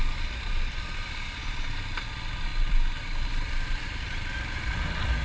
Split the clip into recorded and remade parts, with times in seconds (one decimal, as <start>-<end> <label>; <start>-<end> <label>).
0.0-5.2 recorded